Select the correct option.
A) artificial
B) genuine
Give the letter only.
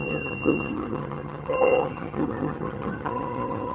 A